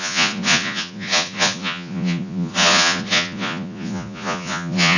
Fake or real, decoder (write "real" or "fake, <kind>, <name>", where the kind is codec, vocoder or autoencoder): fake, vocoder, Vocos